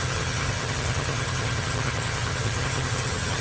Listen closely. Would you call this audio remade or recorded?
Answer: remade